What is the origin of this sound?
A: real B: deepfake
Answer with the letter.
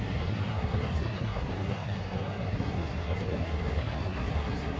B